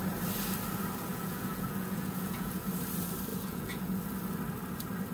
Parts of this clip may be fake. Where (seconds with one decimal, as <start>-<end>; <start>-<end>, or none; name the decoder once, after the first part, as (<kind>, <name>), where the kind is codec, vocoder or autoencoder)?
1.1-2.7 (vocoder, Vocos); 3.3-4.0